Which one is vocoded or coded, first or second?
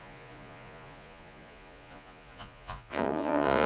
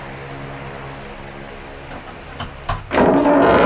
first